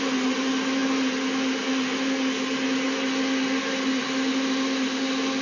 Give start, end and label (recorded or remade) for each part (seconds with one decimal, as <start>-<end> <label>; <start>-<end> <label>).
0.0-5.4 recorded